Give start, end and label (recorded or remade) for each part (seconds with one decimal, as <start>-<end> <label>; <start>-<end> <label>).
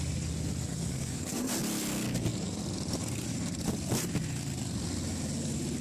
0.0-0.7 recorded; 0.7-1.5 remade; 1.5-5.8 recorded